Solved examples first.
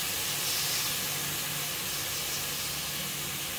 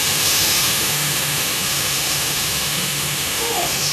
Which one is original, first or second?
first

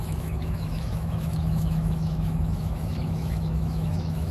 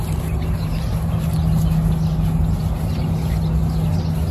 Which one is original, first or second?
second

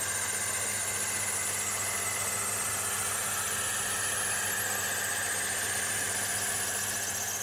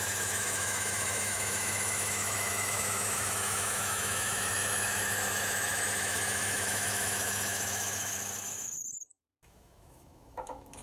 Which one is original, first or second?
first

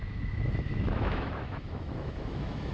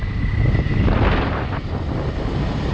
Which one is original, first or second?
second